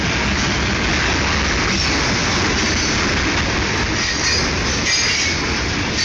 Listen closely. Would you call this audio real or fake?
real